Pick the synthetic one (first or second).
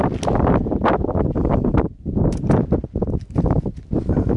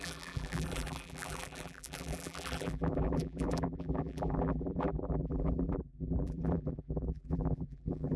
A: second